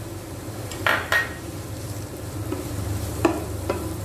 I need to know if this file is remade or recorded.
remade